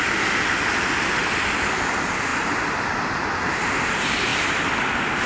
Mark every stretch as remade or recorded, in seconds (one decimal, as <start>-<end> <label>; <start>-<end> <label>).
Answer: 0.0-5.3 recorded